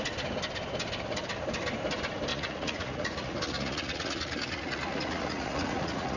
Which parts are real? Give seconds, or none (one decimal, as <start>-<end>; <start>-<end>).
0.0-2.3